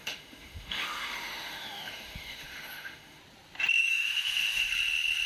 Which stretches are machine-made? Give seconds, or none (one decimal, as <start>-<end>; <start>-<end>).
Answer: 0.0-3.2; 3.9-4.7